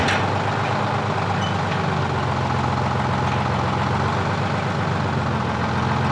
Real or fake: real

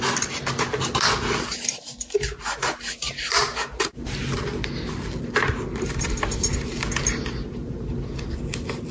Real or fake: real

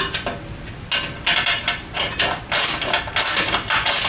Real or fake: real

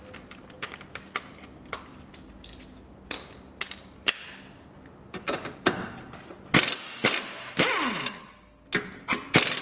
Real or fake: real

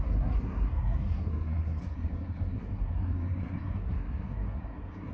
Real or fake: fake